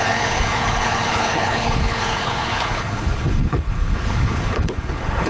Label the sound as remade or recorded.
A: remade